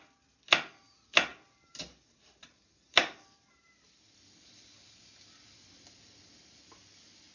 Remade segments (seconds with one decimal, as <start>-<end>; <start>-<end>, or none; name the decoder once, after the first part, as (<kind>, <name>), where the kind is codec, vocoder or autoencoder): 1.3-5.0 (vocoder, BigVGAN v2)